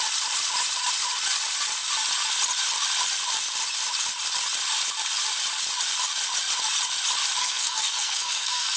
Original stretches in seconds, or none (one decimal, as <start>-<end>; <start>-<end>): 0.0-7.4